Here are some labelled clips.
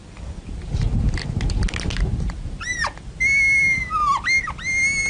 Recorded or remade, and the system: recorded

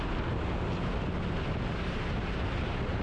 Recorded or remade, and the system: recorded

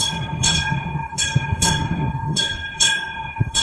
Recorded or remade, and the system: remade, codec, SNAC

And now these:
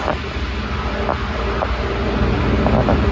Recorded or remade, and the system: recorded